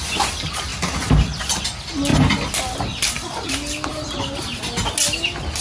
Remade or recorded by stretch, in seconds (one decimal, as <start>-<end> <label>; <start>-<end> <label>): 0.0-0.7 recorded; 0.7-1.6 remade; 1.6-3.9 recorded; 3.9-4.6 remade; 4.6-5.6 recorded